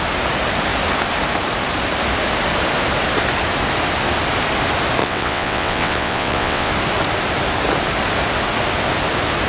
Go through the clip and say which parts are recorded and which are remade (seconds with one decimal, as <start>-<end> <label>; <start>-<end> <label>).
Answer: 0.0-5.0 recorded; 5.0-6.7 remade; 6.7-9.5 recorded